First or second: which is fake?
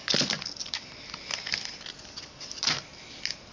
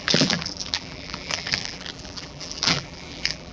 second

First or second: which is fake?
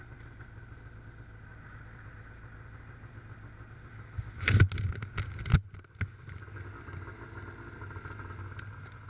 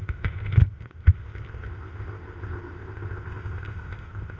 second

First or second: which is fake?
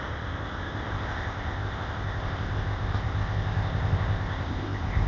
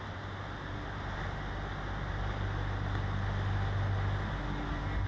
first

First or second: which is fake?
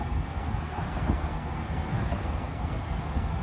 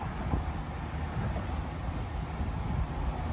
first